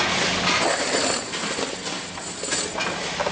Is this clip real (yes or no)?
yes